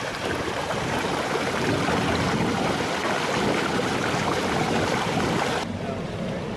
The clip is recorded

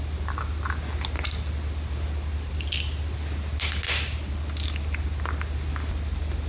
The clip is recorded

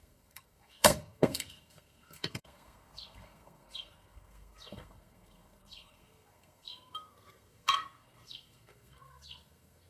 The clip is remade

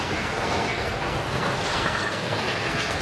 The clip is remade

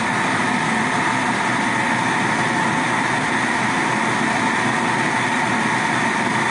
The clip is recorded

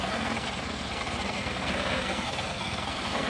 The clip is remade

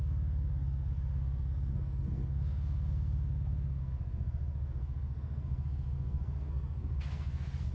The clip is remade